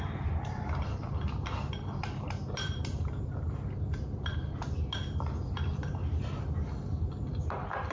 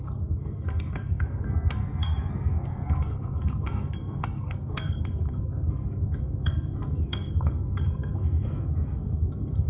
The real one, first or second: first